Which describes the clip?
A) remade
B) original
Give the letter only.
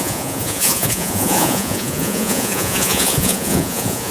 A